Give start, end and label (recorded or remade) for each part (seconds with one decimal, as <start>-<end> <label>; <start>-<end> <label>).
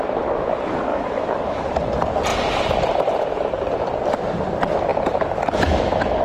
0.0-0.9 recorded; 0.9-1.6 remade; 1.6-6.2 recorded